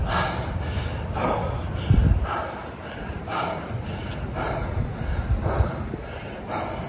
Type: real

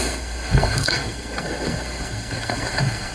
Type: fake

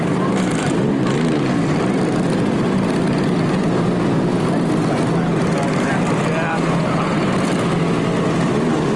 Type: real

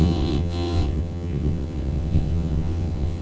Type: fake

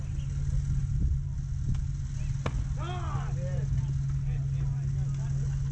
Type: real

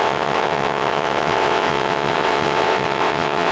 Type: fake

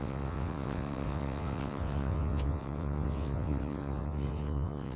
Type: fake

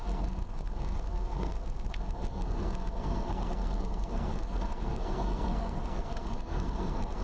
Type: fake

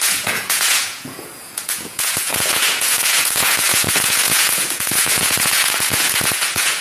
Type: fake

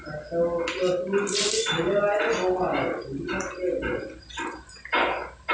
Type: real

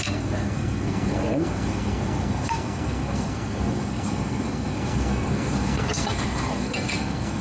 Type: fake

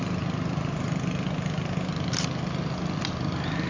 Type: real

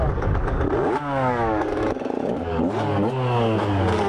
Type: fake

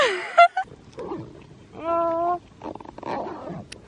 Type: real